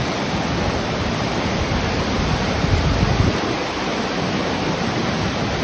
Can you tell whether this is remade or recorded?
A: remade